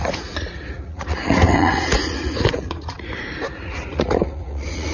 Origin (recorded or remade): remade